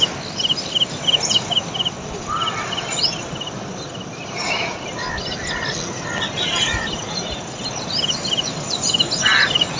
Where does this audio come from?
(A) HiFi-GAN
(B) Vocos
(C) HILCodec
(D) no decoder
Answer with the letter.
D